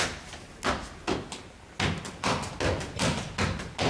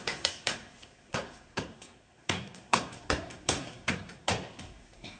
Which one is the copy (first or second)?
second